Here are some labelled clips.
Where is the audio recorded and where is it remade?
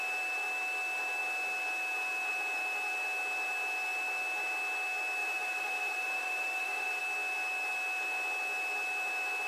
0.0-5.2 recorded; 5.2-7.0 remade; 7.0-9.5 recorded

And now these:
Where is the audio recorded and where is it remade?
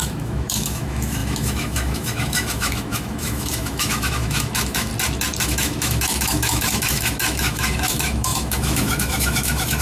0.0-4.9 remade; 4.9-5.4 recorded; 5.4-9.8 remade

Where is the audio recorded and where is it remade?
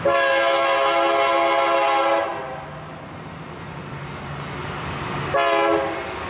0.0-6.3 recorded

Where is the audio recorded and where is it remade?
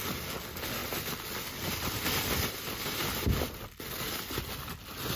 0.0-5.2 recorded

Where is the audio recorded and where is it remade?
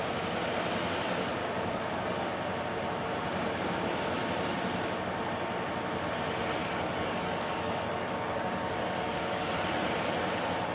0.0-1.4 recorded; 1.4-2.2 remade; 2.2-6.6 recorded; 6.6-9.5 remade; 9.5-10.7 recorded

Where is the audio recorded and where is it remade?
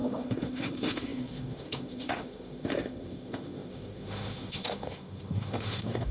0.0-6.1 remade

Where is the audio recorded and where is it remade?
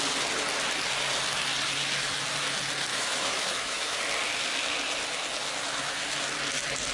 0.0-2.9 recorded; 2.9-4.0 remade; 4.0-6.9 recorded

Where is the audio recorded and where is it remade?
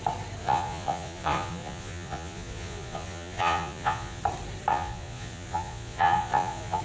0.0-0.4 recorded; 0.4-4.2 remade; 4.2-4.7 recorded; 4.7-6.8 remade